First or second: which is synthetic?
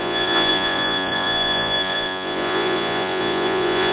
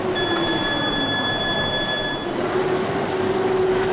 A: first